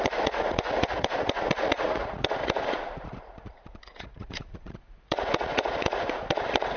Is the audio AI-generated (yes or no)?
yes